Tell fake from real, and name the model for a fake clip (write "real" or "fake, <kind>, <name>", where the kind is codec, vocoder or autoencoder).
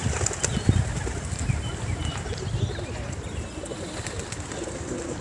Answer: real